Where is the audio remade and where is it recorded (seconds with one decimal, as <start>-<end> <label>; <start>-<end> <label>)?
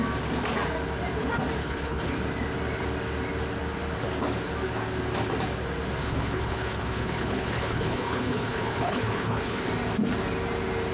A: 0.0-1.6 recorded; 1.6-2.1 remade; 2.1-6.0 recorded; 6.0-9.7 remade; 9.7-10.9 recorded